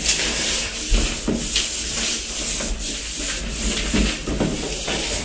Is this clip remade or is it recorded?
recorded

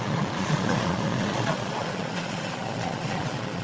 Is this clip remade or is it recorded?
remade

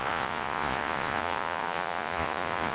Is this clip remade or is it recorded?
remade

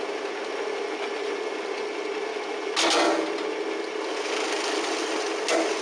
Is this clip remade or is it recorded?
recorded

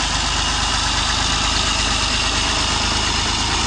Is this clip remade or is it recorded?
recorded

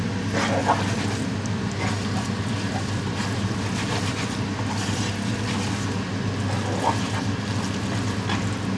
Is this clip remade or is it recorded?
recorded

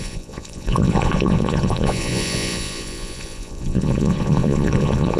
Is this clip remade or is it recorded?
remade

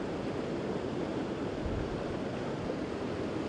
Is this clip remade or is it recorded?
recorded